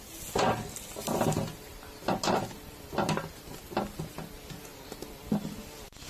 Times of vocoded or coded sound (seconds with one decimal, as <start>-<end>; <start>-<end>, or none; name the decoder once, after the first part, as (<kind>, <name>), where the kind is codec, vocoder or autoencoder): 1.7-3.3 (vocoder, BigVGAN v2); 4.7-5.3